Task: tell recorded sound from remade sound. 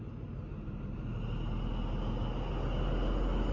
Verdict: recorded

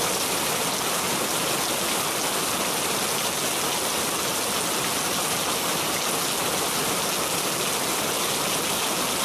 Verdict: recorded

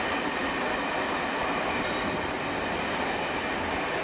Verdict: recorded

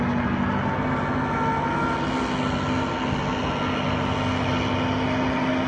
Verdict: recorded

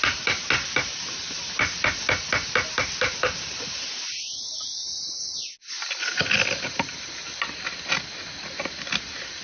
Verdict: recorded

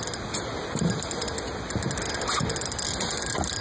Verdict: recorded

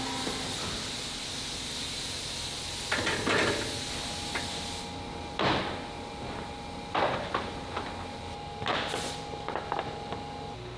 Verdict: recorded